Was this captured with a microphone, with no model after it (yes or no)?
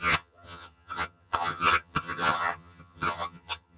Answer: no